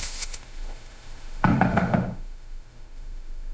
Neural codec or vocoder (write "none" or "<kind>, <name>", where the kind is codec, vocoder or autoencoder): autoencoder, DAC-VAE